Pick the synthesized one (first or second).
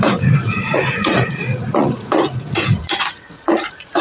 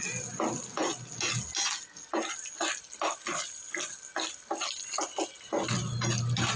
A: first